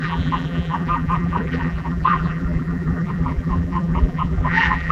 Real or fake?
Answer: fake